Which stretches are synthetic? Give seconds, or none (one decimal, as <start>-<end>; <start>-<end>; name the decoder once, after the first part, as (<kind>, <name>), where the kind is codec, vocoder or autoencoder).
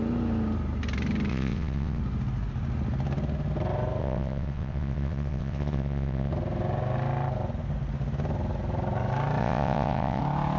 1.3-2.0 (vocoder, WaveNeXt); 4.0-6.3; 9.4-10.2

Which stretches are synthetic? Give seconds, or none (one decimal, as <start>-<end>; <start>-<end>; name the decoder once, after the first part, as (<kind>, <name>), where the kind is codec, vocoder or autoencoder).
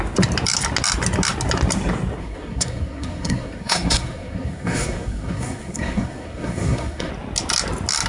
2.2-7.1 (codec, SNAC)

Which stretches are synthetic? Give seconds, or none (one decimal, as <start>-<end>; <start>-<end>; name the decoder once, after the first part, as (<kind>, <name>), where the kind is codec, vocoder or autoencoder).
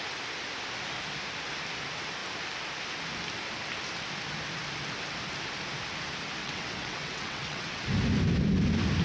6.4-7.8 (vocoder, WaveNeXt)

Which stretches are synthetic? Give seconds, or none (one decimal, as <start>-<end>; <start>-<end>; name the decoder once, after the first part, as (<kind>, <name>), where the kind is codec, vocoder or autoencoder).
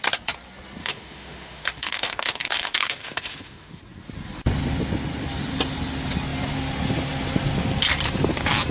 0.8-3.8 (autoencoder, DAC-VAE)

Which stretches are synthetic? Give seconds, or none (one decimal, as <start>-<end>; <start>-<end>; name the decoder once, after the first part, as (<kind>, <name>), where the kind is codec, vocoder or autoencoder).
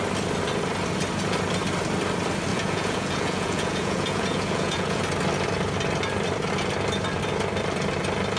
2.5-5.0 (vocoder, Vocos)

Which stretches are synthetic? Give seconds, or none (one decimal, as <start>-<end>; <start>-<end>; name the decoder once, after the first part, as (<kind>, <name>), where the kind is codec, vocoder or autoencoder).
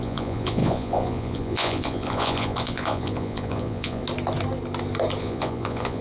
0.0-4.0 (vocoder, Vocos); 5.2-6.0